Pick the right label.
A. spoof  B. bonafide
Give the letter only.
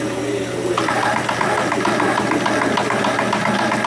B